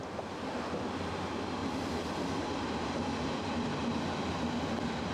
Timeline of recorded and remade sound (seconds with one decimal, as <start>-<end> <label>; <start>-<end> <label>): 0.0-5.1 recorded